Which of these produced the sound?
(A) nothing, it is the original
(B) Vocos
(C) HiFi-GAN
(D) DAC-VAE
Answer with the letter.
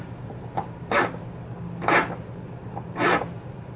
A